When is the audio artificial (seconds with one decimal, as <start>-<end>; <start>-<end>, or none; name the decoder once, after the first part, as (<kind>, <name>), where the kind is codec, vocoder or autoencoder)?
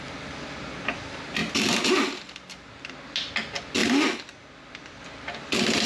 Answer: none